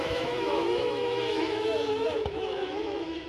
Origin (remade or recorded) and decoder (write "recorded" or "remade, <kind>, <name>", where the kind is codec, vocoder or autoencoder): remade, autoencoder, DAC-VAE